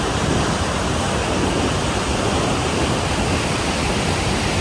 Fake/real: fake